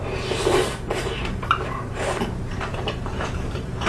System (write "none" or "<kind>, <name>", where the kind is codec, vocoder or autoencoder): vocoder, BigVGAN v2